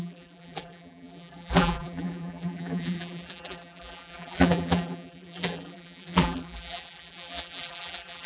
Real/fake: fake